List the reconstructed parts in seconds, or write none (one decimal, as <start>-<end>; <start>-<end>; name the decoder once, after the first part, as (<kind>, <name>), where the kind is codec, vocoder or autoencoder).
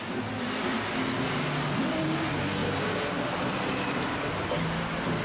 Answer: none